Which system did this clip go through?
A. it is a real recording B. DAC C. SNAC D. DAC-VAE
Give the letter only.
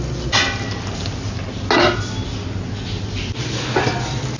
A